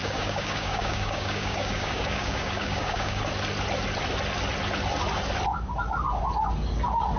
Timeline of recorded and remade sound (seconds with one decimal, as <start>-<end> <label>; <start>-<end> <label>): 0.0-3.2 remade; 3.2-7.2 recorded